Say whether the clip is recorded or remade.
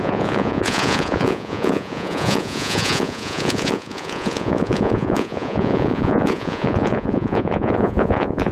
remade